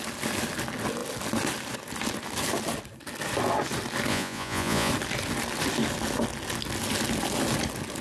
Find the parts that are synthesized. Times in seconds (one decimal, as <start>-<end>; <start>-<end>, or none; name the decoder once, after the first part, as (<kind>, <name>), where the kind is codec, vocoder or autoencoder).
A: 4.1-4.9 (vocoder, Vocos)